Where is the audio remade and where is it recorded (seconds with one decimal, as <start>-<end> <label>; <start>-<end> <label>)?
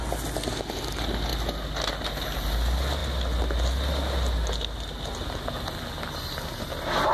0.0-7.1 recorded